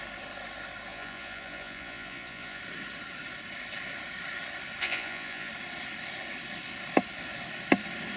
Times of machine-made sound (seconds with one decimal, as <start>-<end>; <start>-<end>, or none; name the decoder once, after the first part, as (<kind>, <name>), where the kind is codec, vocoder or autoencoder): 0.9-2.6 (vocoder, Vocos); 4.8-5.5